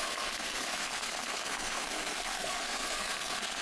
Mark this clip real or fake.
fake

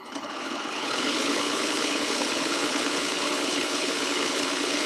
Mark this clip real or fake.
fake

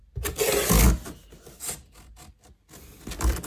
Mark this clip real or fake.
real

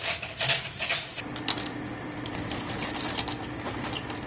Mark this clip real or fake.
real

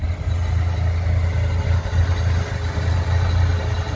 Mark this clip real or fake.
real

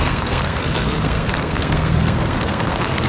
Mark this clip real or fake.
fake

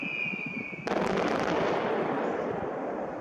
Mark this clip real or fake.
real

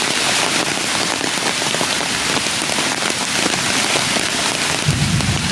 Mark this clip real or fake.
real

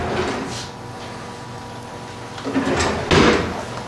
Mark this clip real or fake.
real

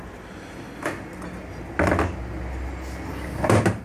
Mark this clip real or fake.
real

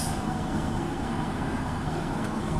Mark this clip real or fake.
fake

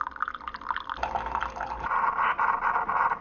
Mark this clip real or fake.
real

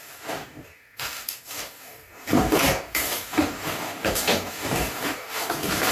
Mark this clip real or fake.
fake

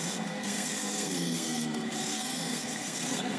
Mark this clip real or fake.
fake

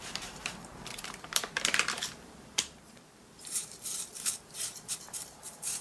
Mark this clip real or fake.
fake